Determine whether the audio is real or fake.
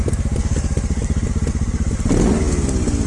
real